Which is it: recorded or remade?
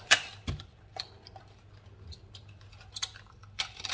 remade